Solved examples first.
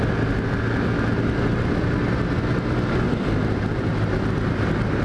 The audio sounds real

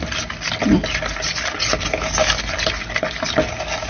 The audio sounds real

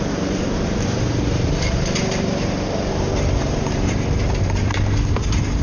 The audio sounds fake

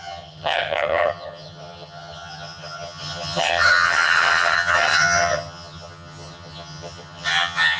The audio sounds fake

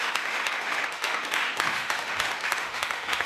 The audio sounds fake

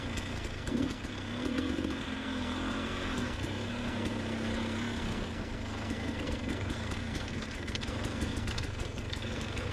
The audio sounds fake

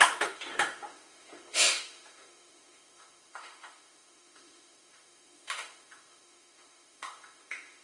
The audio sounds fake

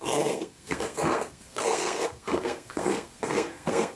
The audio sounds fake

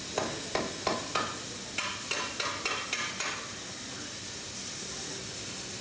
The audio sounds real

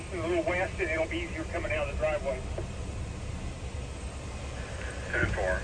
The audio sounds real